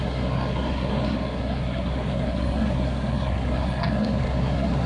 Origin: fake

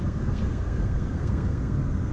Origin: fake